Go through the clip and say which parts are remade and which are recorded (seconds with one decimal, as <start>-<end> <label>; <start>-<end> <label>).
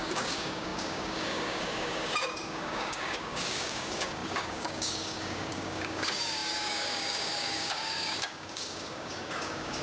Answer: 0.0-9.8 remade